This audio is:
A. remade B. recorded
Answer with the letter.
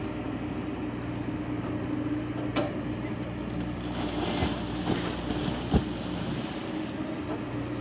B